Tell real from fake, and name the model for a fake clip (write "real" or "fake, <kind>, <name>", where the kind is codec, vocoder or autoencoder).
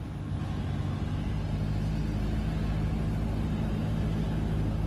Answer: real